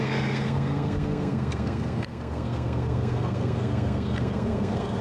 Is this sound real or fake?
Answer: fake